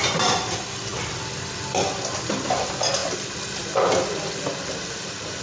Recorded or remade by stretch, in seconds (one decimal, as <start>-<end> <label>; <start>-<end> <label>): 0.0-5.4 recorded